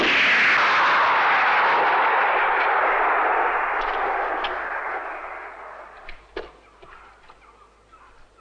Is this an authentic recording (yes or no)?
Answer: yes